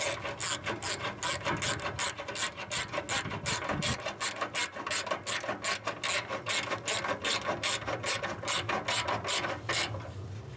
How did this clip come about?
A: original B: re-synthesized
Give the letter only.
A